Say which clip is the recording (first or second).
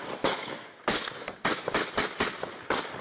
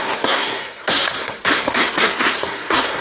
first